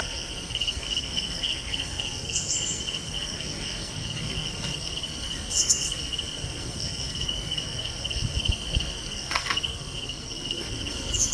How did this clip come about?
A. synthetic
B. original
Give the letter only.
A